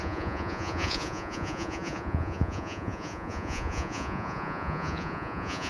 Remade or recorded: remade